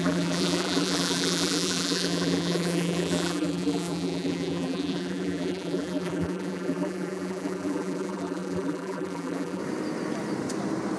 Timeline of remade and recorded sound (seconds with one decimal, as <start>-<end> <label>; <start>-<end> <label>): 0.0-9.6 remade; 9.6-11.0 recorded